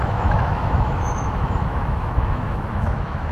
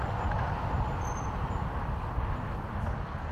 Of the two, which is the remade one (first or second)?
first